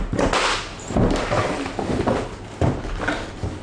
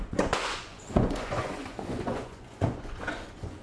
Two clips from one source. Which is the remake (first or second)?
second